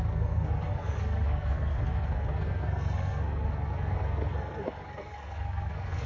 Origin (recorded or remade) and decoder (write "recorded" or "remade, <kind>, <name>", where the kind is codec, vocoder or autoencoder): remade, codec, SNAC